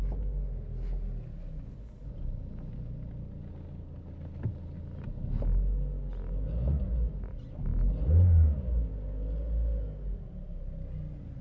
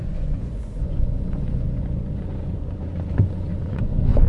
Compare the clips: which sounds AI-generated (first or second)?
second